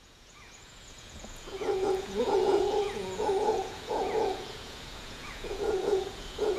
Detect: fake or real fake